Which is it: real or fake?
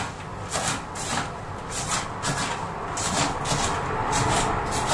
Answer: real